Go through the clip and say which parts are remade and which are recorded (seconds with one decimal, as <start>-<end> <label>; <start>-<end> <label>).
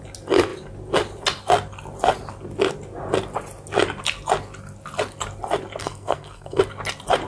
0.0-5.8 recorded; 5.8-6.6 remade; 6.6-7.3 recorded